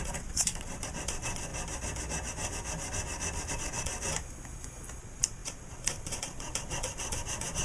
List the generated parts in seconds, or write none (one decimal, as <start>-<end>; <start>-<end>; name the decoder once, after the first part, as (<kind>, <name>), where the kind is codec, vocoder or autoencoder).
0.0-1.5 (vocoder, Vocos); 3.5-3.9; 5.0-7.6